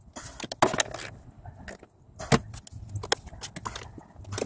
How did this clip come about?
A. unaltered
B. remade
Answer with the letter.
A